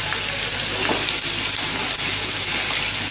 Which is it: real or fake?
real